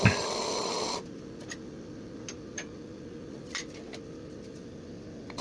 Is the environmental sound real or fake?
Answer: real